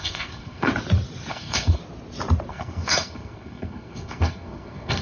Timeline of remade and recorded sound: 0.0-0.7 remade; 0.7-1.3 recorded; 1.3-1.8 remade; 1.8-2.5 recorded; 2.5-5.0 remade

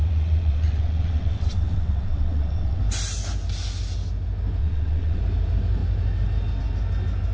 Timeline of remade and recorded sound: 0.0-2.8 remade; 2.8-4.6 recorded; 4.6-5.2 remade; 5.2-7.3 recorded

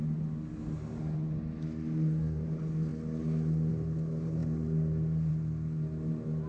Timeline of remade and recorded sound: 0.0-6.5 recorded

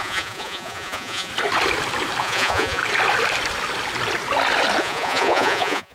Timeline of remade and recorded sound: 0.0-1.3 remade; 1.3-2.2 recorded; 2.2-2.8 remade; 2.8-4.8 recorded; 4.8-5.9 remade

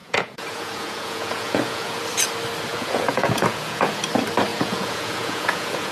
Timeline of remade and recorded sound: 0.0-2.0 remade; 2.0-2.7 recorded; 2.7-4.0 remade; 4.0-4.5 recorded; 4.5-5.9 remade

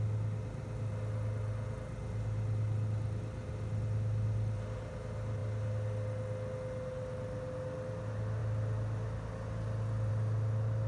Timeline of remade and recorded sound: 0.0-10.9 recorded